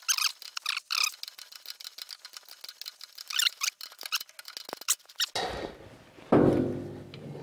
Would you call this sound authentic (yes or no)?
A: yes